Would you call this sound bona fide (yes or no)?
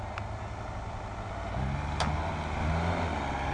yes